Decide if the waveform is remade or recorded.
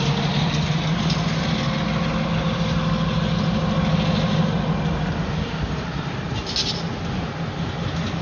recorded